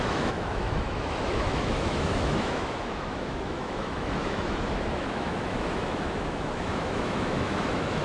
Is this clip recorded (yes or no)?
no